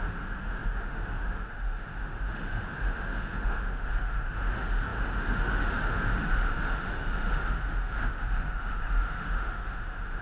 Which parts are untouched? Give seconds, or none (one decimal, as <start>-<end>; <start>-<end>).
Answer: none